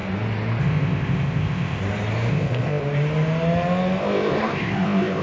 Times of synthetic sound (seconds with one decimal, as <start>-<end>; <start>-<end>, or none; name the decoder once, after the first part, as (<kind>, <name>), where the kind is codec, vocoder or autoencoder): 0.6-1.8 (codec, ZipCodec); 2.3-2.8; 4.0-5.2